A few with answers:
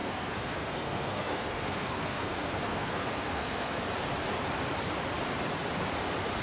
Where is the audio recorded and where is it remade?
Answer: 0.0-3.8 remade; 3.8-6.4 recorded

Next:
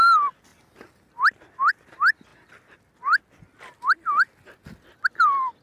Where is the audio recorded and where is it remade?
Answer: 0.0-5.6 recorded

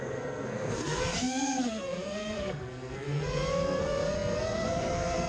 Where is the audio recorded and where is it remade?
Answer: 0.0-5.3 remade